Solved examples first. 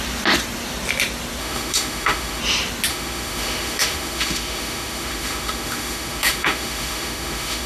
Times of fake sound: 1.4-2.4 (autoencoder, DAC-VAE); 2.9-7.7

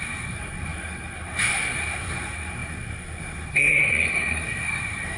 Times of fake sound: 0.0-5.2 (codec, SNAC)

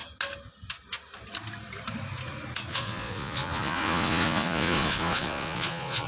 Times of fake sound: 2.7-6.1 (vocoder, Vocos)